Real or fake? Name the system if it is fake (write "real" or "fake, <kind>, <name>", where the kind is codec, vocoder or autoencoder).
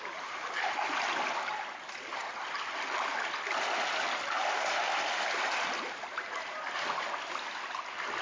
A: real